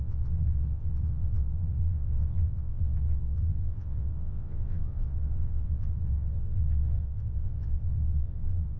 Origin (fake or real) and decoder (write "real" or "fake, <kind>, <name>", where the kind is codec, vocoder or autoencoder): fake, vocoder, WaveNeXt